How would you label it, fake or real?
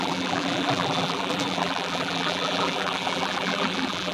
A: fake